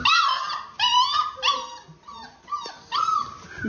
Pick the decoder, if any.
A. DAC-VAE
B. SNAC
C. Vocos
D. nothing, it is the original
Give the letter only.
D